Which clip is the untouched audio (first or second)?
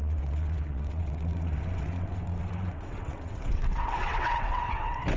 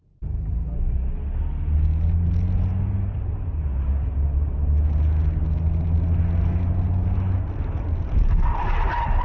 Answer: second